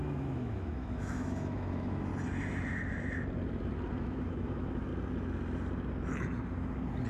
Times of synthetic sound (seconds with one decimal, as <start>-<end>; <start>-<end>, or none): 0.0-2.1; 4.0-4.9